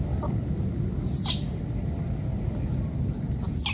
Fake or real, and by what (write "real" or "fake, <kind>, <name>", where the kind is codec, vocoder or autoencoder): real